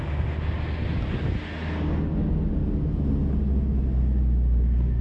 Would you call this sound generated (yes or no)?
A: no